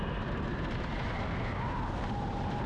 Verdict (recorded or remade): recorded